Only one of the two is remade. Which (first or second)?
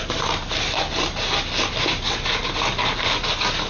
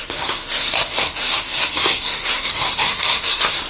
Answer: second